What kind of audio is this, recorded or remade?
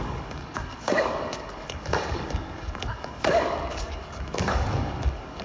remade